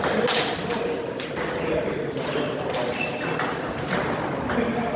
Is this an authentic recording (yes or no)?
yes